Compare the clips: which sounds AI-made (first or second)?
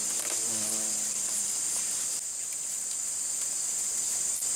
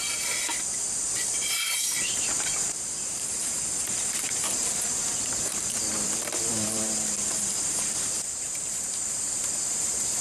second